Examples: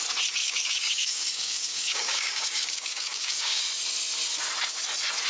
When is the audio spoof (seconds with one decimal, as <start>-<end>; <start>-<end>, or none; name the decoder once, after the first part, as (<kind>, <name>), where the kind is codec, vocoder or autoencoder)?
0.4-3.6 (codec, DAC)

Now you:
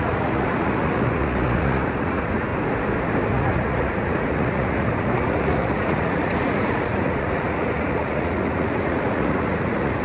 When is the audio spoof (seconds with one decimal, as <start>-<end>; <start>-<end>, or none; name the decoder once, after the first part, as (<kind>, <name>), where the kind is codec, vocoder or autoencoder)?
0.0-2.5 (vocoder, Vocos); 3.3-10.0

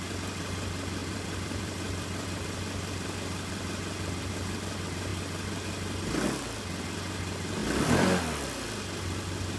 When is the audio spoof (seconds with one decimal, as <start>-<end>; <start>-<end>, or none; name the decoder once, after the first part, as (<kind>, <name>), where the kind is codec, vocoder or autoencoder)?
1.0-4.3 (vocoder, BigVGAN v2)

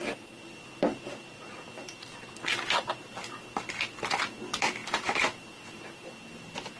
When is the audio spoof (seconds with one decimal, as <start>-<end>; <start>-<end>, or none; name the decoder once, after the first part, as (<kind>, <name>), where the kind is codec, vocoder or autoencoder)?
none

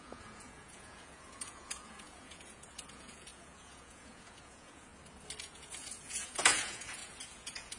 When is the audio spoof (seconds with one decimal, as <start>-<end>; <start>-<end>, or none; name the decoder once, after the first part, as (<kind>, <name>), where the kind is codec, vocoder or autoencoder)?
0.0-4.9 (vocoder, Vocos); 5.4-7.8